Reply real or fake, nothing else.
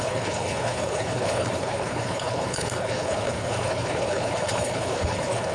fake